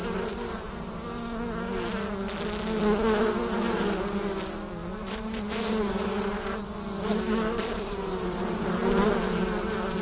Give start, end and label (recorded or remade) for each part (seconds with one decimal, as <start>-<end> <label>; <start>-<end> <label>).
0.0-0.9 remade; 0.9-4.9 recorded; 4.9-6.6 remade; 6.6-7.1 recorded; 7.1-8.8 remade; 8.8-10.0 recorded